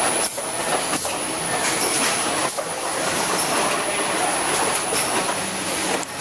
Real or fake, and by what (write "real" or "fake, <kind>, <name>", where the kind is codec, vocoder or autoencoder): real